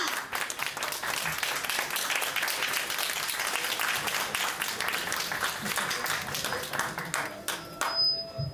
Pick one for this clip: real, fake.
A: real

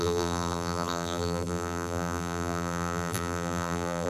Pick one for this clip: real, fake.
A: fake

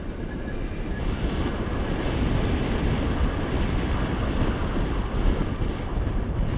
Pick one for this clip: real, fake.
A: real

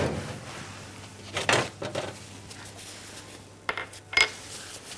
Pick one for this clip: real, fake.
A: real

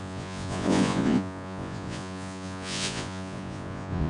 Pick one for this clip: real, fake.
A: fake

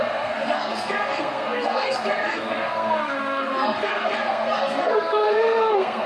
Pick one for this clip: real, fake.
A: fake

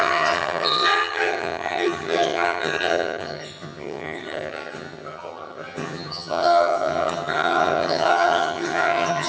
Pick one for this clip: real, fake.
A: fake